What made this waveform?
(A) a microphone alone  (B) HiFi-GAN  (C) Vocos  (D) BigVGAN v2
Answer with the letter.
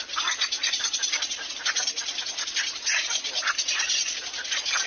A